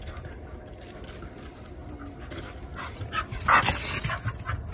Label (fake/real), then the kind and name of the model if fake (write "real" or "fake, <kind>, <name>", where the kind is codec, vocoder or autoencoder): real